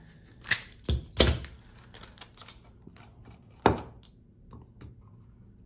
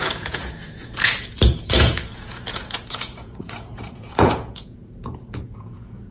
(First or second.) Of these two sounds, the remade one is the second